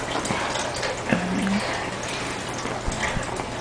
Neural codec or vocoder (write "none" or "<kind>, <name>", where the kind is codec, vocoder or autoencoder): none